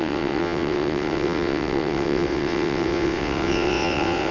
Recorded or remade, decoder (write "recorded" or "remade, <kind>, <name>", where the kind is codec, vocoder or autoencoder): remade, vocoder, WaveNeXt